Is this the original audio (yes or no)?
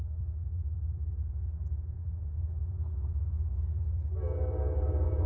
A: no